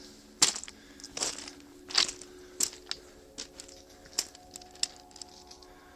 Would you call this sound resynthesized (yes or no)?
no